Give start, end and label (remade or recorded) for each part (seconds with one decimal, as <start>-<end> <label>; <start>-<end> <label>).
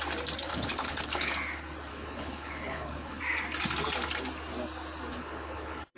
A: 0.0-0.5 recorded; 0.5-1.3 remade; 1.3-1.9 recorded; 1.9-3.2 remade; 3.2-5.1 recorded; 5.1-6.0 remade